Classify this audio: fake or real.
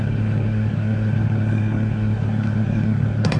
fake